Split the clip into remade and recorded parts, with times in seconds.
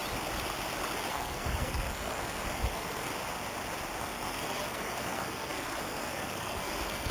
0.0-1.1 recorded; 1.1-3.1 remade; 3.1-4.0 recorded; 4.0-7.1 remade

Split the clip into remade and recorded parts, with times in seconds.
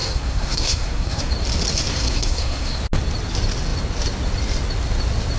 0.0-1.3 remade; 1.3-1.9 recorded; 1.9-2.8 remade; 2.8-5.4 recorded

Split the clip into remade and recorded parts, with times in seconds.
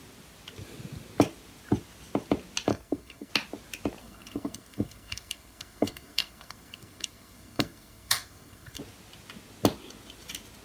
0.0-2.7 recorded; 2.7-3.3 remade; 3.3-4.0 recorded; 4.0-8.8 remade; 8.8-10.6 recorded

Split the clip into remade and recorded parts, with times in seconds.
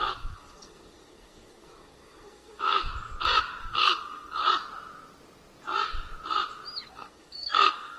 0.0-2.9 remade; 2.9-3.6 recorded; 3.6-4.4 remade; 4.4-6.9 recorded; 6.9-8.0 remade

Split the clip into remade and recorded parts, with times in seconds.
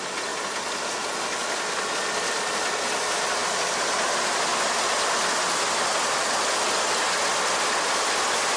0.0-8.6 recorded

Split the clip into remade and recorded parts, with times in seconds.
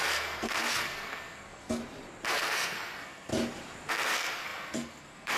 0.0-1.8 remade; 1.8-2.3 recorded; 2.3-3.3 remade; 3.3-3.9 recorded; 3.9-5.4 remade